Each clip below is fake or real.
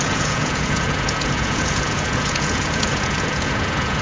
fake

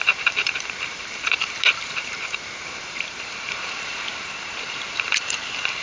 fake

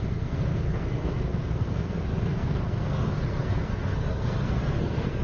fake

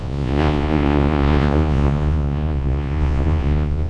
fake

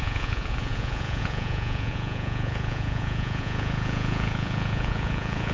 fake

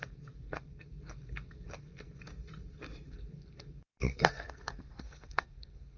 fake